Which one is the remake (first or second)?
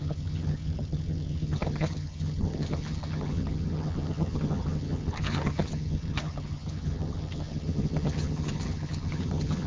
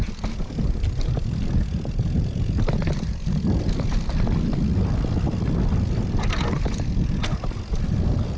first